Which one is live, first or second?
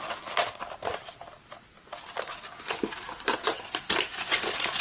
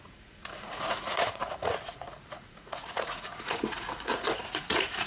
first